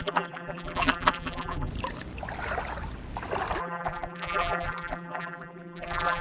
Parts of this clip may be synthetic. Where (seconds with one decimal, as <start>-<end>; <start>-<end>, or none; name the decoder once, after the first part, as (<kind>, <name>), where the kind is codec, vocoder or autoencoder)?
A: 0.0-1.7 (vocoder, BigVGAN v2); 3.6-6.2